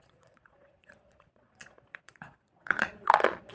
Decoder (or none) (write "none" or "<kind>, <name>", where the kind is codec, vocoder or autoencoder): vocoder, Vocos